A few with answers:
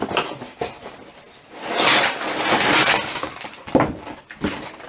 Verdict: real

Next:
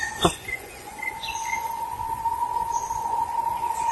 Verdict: fake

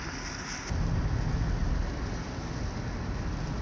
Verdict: real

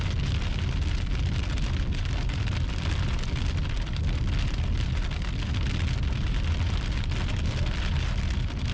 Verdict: real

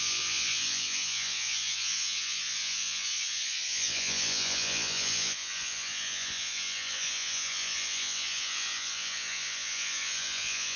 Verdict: fake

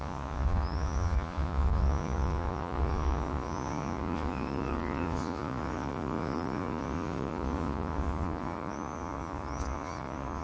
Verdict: fake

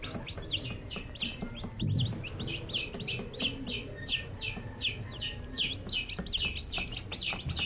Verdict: real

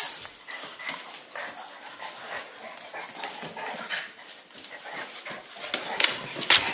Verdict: real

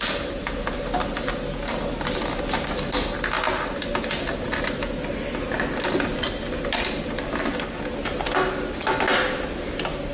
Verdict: real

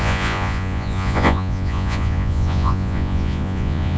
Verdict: fake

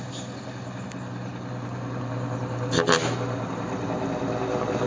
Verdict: real